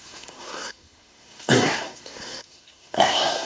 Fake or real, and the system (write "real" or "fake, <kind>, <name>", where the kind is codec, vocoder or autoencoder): fake, codec, SNAC